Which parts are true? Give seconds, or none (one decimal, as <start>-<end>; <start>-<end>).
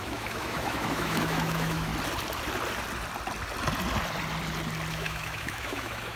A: 1.9-4.9